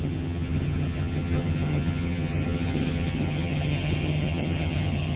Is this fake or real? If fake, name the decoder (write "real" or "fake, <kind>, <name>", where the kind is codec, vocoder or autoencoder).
fake, vocoder, HiFi-GAN